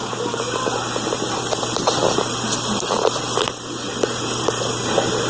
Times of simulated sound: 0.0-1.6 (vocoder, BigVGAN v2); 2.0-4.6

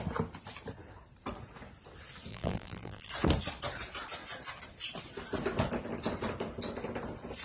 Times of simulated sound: 2.3-3.1 (vocoder, BigVGAN v2)